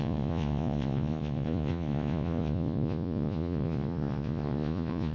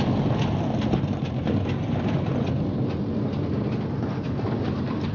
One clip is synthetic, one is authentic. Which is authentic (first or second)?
second